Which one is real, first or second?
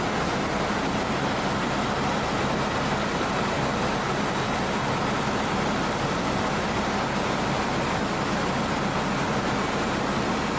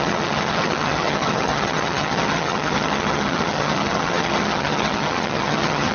first